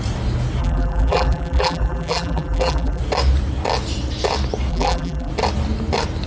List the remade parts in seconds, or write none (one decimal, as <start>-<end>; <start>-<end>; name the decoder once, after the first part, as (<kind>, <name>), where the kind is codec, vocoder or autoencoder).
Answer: 0.6-3.0 (vocoder, BigVGAN v2); 4.7-5.3